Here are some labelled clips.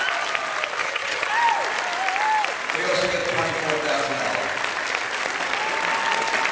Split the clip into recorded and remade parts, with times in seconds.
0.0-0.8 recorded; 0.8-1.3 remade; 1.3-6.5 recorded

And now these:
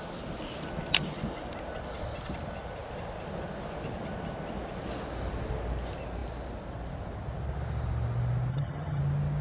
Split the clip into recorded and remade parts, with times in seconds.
0.0-8.5 recorded; 8.5-9.0 remade; 9.0-9.4 recorded